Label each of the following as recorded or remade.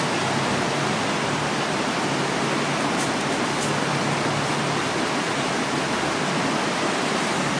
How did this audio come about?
recorded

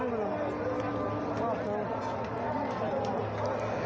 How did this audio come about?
recorded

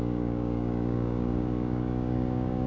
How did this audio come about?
remade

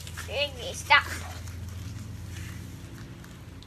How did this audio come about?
recorded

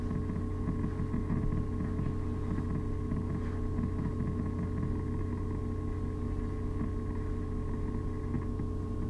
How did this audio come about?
recorded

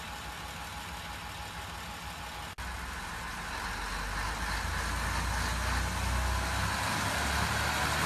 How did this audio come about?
recorded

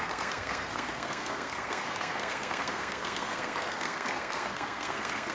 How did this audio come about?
remade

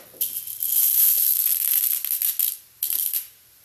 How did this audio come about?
recorded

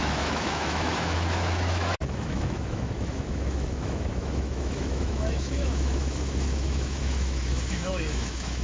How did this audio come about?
remade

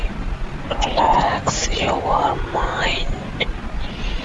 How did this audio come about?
recorded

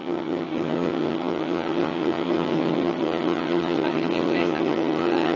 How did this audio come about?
remade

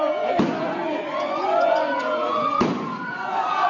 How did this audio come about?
remade